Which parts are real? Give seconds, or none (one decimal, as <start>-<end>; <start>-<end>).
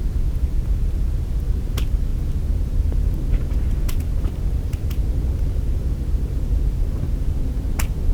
0.0-8.1